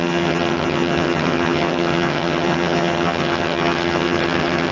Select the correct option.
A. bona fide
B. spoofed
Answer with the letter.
B